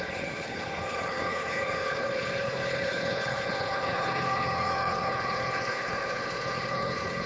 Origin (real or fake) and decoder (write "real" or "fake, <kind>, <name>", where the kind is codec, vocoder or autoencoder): fake, codec, HILCodec